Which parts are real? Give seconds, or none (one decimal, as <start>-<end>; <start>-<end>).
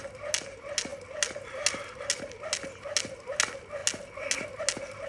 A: 0.0-5.1